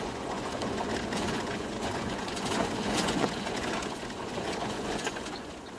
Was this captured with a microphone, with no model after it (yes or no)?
no